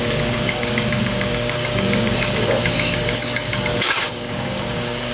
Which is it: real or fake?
fake